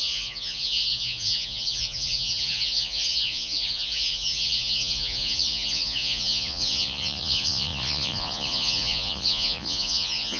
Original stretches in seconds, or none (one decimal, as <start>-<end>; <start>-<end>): none